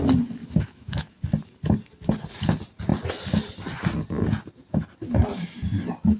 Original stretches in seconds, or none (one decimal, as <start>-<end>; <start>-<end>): 0.0-0.4; 1.2-6.2